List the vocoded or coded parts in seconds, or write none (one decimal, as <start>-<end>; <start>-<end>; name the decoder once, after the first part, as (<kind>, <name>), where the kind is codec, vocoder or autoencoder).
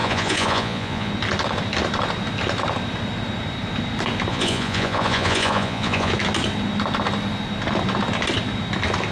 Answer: 0.0-1.1 (vocoder, Vocos); 4.3-6.1